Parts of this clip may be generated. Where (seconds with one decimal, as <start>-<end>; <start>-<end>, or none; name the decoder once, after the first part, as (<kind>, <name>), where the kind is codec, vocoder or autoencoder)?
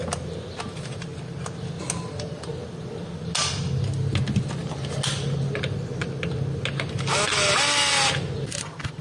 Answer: none